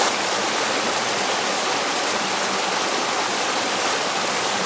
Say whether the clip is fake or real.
real